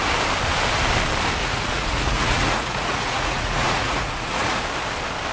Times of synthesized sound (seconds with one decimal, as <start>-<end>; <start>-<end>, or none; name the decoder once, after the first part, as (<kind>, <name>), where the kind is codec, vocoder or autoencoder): 1.4-4.6 (vocoder, Vocos)